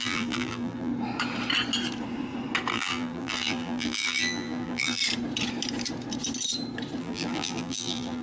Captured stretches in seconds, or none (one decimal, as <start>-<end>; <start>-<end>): 0.9-2.7; 5.0-7.0